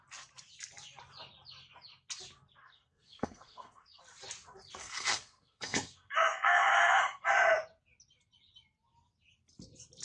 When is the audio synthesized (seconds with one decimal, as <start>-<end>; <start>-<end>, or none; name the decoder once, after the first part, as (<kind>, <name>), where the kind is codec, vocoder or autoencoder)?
2.6-4.0 (codec, SNAC); 4.8-7.0